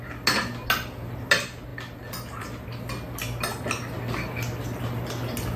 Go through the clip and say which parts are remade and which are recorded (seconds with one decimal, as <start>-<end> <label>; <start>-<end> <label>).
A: 0.0-5.6 recorded